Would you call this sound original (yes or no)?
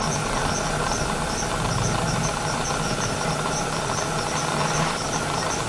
yes